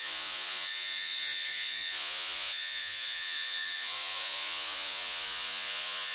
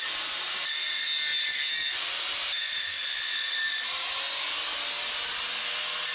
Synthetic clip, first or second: first